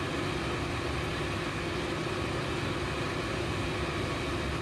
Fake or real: real